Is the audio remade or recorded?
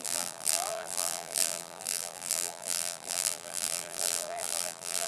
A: remade